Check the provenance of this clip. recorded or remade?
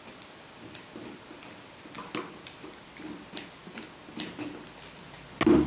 recorded